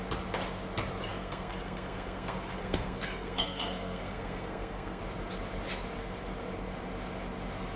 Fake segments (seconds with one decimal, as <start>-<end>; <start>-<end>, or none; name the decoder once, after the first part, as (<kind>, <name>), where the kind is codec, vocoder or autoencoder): 1.1-5.0 (codec, SNAC)

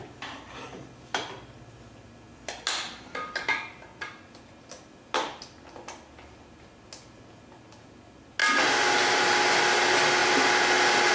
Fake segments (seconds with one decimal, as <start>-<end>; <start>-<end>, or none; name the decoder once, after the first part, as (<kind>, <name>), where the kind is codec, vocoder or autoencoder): none

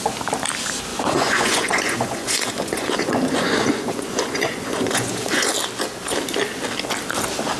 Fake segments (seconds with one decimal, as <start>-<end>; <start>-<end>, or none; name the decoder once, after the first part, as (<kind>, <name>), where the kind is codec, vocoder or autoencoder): 0.9-5.5 (vocoder, Vocos)

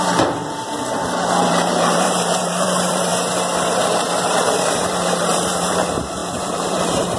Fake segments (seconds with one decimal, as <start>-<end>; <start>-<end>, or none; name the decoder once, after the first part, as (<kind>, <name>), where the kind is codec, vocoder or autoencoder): 0.0-0.4 (vocoder, BigVGAN v2); 1.5-3.1; 3.9-7.2

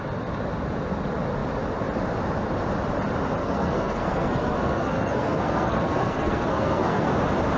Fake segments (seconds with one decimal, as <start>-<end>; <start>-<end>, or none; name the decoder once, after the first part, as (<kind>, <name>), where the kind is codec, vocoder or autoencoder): 3.4-7.1 (codec, SNAC)

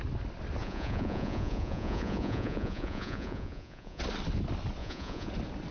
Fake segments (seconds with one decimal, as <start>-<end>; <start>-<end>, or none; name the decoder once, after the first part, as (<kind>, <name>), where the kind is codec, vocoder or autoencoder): 0.6-4.0 (vocoder, Vocos); 4.8-5.3

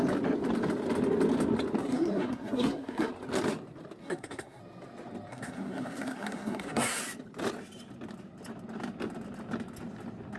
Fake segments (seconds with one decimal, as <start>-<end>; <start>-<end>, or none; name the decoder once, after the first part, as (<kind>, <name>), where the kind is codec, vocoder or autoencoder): 1.8-3.1 (codec, SNAC); 4.0-4.6; 5.3-7.0